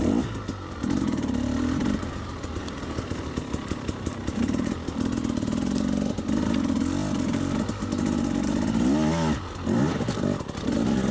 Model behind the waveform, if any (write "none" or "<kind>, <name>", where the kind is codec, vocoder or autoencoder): vocoder, BigVGAN v2